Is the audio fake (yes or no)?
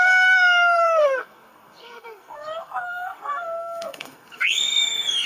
yes